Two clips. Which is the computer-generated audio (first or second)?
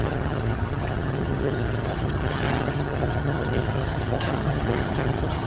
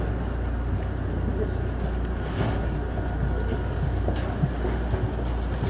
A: first